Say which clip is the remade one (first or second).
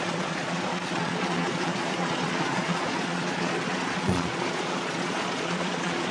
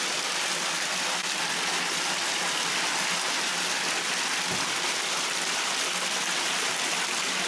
first